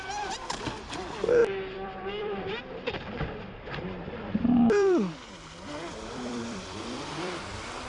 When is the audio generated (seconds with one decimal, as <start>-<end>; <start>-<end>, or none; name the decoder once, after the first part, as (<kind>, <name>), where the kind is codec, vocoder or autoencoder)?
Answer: 1.4-5.2 (vocoder, BigVGAN v2); 5.9-7.4